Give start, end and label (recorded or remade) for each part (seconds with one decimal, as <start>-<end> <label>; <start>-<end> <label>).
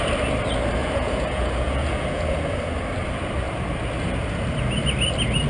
0.0-0.8 recorded; 0.8-2.6 remade; 2.6-5.5 recorded